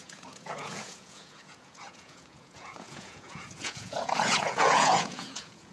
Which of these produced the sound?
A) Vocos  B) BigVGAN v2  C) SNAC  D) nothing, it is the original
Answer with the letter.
A